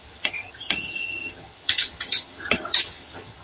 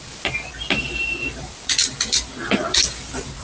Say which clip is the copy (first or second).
first